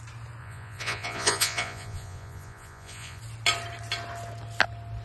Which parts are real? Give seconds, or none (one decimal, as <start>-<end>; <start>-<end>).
0.0-0.4; 3.2-5.0